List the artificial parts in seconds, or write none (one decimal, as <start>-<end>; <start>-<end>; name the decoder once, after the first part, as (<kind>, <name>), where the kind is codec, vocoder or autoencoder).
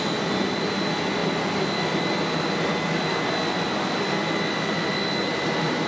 none